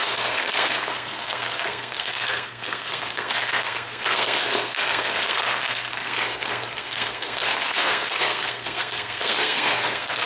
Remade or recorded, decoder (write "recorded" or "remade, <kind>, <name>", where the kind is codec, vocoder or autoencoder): remade, codec, SNAC